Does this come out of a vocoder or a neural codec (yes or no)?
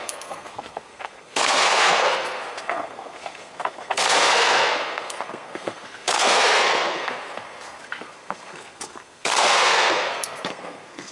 yes